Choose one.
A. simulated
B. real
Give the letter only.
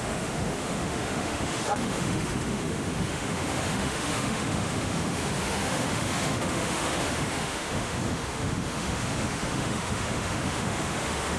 A